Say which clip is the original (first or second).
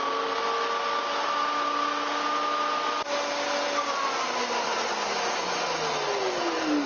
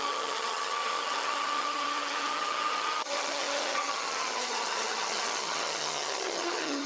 first